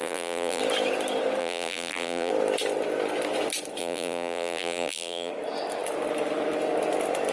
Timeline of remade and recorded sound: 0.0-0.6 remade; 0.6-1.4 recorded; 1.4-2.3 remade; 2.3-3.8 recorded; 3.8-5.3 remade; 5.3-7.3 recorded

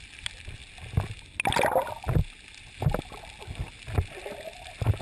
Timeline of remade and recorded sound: 0.0-5.0 recorded

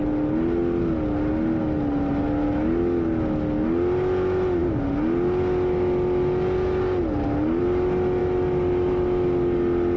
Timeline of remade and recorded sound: 0.0-10.0 recorded

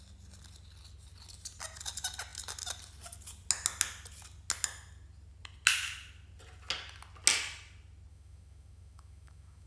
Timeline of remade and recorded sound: 0.0-8.1 recorded; 8.1-9.7 remade

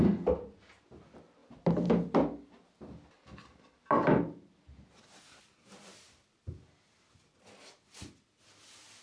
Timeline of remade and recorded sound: 0.0-9.0 recorded